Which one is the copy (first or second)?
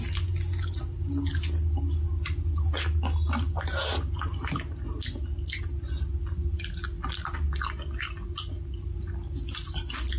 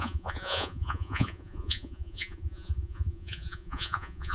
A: second